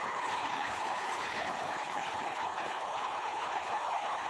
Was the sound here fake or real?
fake